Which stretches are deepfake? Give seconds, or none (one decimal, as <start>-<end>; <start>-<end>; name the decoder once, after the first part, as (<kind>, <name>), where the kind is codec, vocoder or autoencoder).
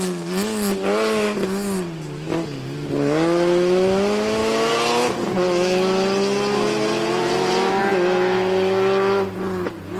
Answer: none